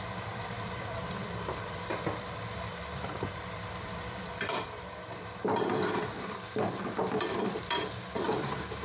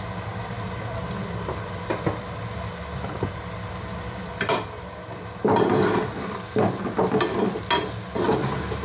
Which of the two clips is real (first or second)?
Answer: second